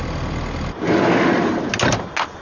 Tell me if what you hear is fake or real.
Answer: real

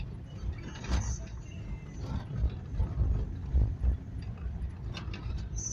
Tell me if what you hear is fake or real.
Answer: real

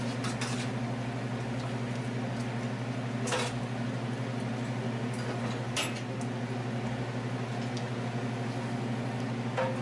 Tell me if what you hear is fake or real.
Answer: real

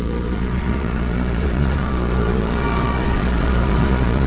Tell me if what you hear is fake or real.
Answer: fake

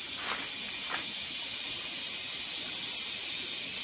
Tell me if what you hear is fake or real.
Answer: real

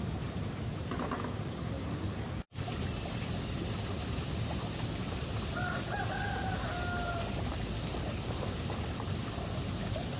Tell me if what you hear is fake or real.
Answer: real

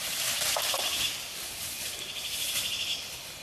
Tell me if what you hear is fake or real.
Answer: fake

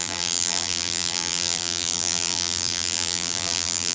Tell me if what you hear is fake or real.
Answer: fake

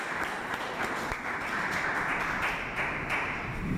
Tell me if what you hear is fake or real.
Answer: real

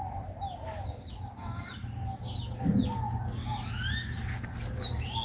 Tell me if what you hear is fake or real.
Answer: real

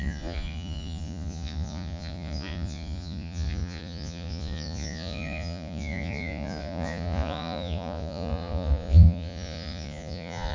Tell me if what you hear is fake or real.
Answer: fake